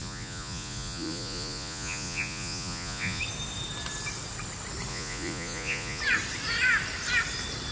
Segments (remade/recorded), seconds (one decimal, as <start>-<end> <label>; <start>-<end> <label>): 0.0-3.2 remade; 3.2-4.9 recorded; 4.9-6.0 remade; 6.0-7.7 recorded